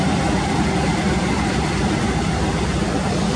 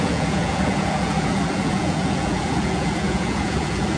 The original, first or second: first